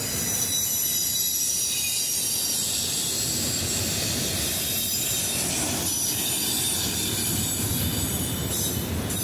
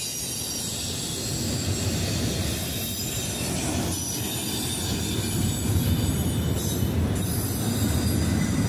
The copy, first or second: first